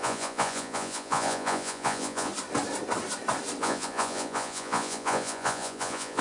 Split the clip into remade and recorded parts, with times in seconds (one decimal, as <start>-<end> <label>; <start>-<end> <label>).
0.0-2.3 remade; 2.3-3.6 recorded; 3.6-6.2 remade

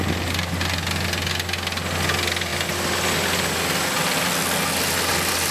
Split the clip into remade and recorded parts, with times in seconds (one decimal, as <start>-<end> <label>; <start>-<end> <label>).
0.0-5.5 recorded

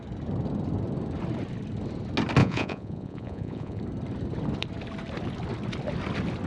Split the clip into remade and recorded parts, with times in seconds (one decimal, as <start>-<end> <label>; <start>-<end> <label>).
0.0-2.4 recorded; 2.4-3.8 remade; 3.8-6.5 recorded

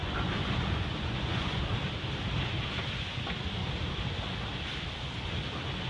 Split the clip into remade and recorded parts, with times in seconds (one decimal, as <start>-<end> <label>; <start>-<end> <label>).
0.0-1.6 remade; 1.6-5.9 recorded

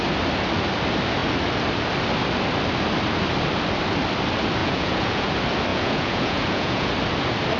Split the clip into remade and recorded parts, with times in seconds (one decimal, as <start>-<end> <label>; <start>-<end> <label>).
0.0-4.6 recorded; 4.6-5.3 remade; 5.3-5.7 recorded; 5.7-6.9 remade; 6.9-7.6 recorded

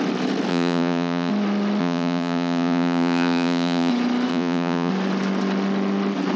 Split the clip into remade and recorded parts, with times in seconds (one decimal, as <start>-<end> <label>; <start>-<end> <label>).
0.0-0.5 recorded; 0.5-1.3 remade; 1.3-1.8 recorded; 1.8-3.9 remade; 3.9-4.3 recorded; 4.3-4.9 remade; 4.9-6.4 recorded